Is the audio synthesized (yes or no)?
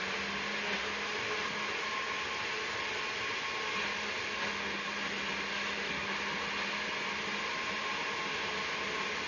no